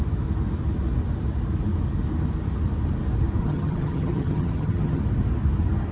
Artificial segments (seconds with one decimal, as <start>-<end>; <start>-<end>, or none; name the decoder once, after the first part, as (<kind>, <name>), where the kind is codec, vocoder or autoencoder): 3.4-5.0 (vocoder, HiFi-GAN)